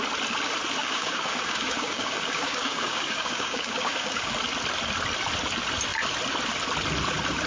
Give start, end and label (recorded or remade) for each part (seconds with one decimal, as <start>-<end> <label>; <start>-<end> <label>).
0.0-0.8 recorded; 0.8-4.3 remade; 4.3-7.5 recorded